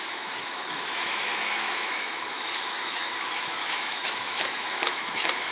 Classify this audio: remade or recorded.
remade